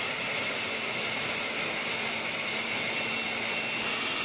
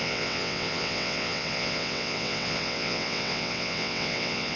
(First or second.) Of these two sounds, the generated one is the second